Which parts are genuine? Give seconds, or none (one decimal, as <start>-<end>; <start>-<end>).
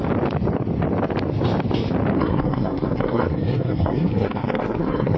0.0-2.2